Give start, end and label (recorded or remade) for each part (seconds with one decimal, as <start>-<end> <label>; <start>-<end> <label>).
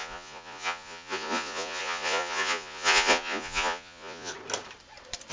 0.0-4.3 remade; 4.3-5.3 recorded